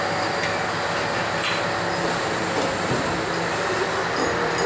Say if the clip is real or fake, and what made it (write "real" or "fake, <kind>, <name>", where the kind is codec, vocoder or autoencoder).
real